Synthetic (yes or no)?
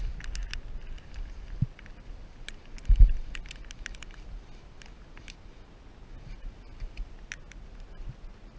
no